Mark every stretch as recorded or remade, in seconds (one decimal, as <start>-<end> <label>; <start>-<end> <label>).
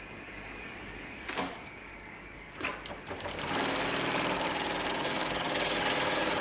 0.0-2.7 remade; 2.7-4.9 recorded; 4.9-6.4 remade